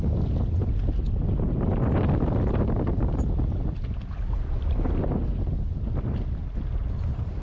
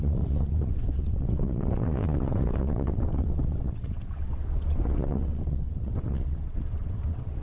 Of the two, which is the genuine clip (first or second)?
first